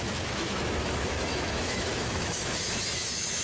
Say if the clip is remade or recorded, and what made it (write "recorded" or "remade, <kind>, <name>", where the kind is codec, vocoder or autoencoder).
remade, autoencoder, DAC-VAE